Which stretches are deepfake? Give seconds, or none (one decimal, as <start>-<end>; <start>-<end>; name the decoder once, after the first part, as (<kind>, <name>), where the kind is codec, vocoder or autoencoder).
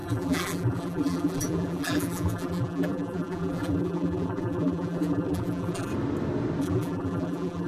0.0-5.9 (vocoder, BigVGAN v2); 6.6-7.7